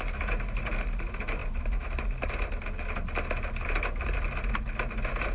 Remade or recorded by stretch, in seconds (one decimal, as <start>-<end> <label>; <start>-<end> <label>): 0.0-5.3 recorded